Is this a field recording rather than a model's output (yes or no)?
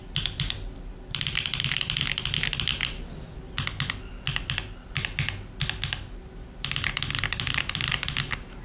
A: yes